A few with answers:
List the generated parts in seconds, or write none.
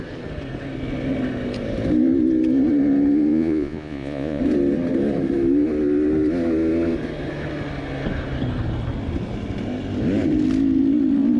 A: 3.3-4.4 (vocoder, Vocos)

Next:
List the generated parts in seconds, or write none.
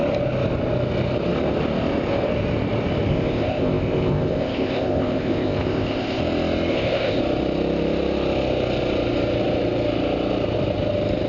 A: 3.1-6.2 (codec, ZipCodec); 6.7-7.2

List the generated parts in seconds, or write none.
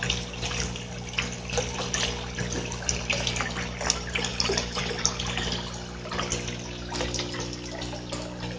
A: 4.3-4.8 (vocoder, BigVGAN v2)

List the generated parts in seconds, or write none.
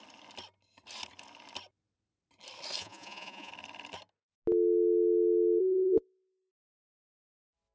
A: 2.8-3.5 (vocoder, Vocos); 5.6-6.5